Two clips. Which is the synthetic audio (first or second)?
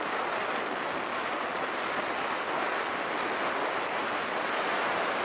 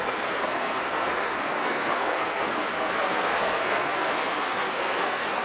second